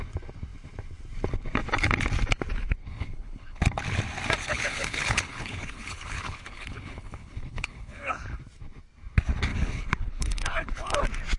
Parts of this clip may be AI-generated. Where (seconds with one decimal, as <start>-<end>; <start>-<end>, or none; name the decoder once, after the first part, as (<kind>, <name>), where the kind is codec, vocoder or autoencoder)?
2.8-3.6 (codec, HILCodec); 4.4-8.4; 9.5-11.0